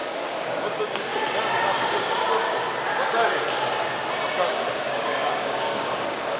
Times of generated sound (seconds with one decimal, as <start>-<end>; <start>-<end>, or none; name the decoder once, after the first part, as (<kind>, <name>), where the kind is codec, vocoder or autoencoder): 0.0-1.1 (codec, DAC); 4.9-6.4